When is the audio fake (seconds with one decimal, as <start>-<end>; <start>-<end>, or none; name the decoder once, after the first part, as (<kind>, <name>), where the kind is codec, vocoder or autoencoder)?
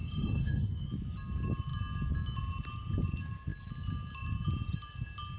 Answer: 0.0-0.9 (autoencoder, DAC-VAE)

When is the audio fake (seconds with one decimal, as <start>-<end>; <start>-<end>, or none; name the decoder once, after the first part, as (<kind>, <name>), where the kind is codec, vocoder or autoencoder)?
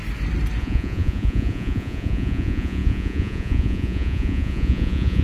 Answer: 0.6-5.2 (vocoder, Vocos)